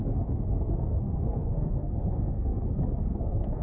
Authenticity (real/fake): fake